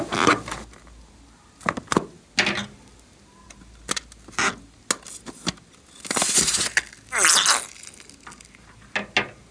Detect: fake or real real